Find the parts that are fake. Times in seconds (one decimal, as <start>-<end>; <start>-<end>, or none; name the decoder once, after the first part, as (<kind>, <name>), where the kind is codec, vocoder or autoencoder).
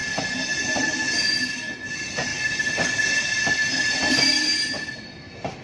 0.0-5.6 (vocoder, BigVGAN v2)